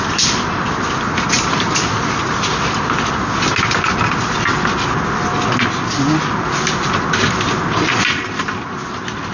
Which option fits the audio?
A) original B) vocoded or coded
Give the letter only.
A